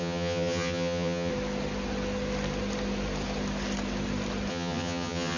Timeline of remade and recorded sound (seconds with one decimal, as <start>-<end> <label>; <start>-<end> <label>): 0.0-1.3 remade; 1.3-4.5 recorded; 4.5-5.4 remade